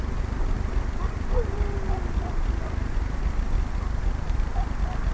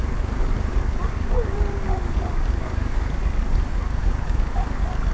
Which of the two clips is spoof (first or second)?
second